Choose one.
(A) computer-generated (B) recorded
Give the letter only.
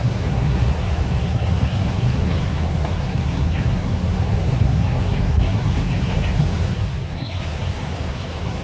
A